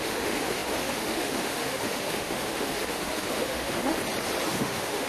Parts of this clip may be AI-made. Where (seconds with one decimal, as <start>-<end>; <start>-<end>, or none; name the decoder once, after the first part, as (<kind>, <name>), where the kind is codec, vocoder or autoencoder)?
0.0-4.0 (autoencoder, DAC-VAE); 4.5-5.1

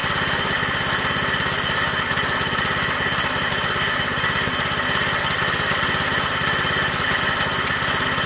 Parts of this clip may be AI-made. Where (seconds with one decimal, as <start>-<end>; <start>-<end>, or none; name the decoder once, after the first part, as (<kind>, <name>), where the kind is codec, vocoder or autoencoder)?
none

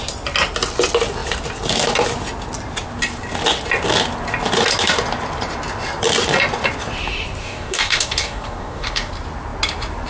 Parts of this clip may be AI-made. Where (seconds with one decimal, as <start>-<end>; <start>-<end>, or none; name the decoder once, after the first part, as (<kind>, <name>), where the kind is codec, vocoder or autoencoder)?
7.4-9.1 (codec, DAC)

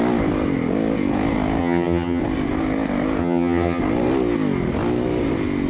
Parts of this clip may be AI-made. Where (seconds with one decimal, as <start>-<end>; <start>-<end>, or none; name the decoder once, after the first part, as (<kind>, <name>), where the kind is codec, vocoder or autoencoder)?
1.6-2.2 (vocoder, HiFi-GAN); 3.2-3.8

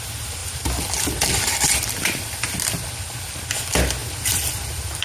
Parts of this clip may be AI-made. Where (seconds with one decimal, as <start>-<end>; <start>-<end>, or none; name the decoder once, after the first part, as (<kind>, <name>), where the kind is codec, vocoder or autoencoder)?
0.4-2.9 (vocoder, BigVGAN v2); 4.0-5.0

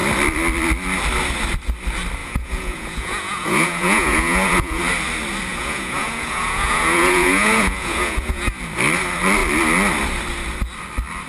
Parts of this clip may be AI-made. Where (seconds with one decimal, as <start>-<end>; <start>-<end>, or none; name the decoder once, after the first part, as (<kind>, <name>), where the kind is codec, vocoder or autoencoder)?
2.2-4.8 (vocoder, Vocos); 5.5-8.5

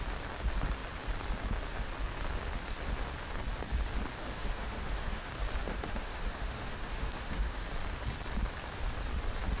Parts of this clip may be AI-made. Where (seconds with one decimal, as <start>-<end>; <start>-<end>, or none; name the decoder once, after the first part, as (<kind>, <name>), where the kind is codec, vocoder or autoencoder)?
4.2-5.3 (autoencoder, DAC-VAE); 5.7-7.6